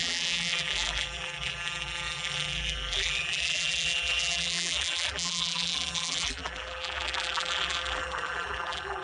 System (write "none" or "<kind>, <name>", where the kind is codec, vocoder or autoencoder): vocoder, BigVGAN v2